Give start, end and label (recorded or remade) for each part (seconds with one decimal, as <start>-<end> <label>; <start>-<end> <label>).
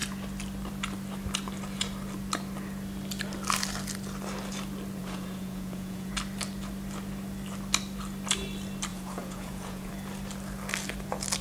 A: 0.0-5.0 recorded; 5.0-6.1 remade; 6.1-8.9 recorded; 8.9-9.9 remade; 9.9-11.4 recorded